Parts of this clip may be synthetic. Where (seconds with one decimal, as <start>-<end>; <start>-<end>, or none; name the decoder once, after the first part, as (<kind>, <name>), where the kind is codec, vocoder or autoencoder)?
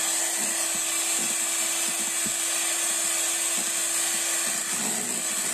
none